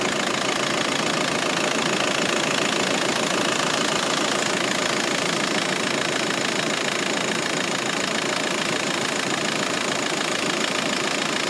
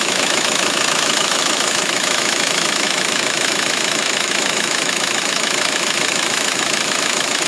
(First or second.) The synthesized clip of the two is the second